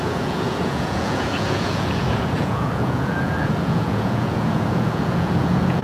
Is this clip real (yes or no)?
no